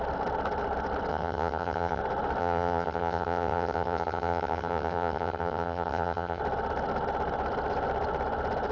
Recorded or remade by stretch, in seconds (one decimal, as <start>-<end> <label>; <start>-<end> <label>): 0.0-1.1 recorded; 1.1-2.0 remade; 2.0-2.4 recorded; 2.4-6.4 remade; 6.4-8.7 recorded